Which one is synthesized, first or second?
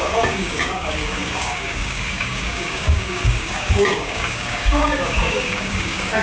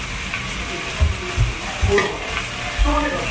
first